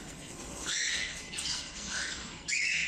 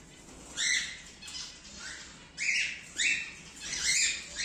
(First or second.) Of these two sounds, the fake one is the first